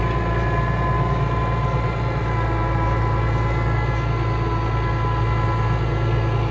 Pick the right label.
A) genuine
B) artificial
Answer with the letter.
A